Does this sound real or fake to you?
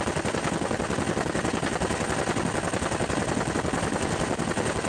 real